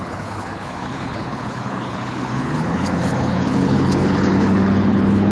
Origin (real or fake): fake